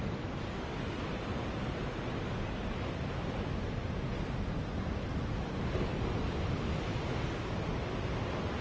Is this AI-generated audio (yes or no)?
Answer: no